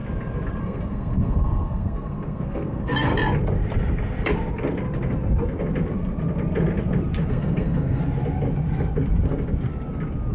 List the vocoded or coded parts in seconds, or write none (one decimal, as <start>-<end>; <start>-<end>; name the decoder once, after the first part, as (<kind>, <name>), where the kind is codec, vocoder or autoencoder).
0.6-3.1 (codec, SNAC); 7.3-8.0